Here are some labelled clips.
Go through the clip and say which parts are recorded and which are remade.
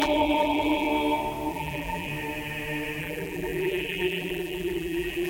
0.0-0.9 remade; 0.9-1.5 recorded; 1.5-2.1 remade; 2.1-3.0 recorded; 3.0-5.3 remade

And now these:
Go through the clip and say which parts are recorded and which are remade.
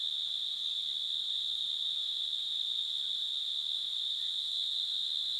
0.0-5.4 recorded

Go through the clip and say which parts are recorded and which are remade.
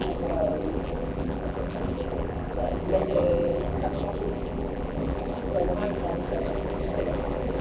0.0-7.6 remade